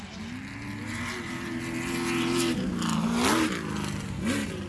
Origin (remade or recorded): recorded